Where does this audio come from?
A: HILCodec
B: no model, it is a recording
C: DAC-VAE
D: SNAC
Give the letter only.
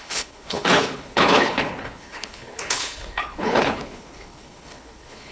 A